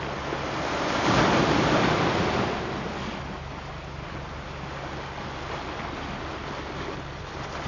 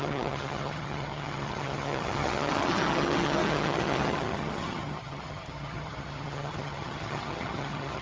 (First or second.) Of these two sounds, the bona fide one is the first